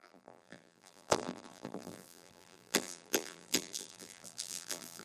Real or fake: fake